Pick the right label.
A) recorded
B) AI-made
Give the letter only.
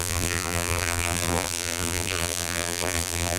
B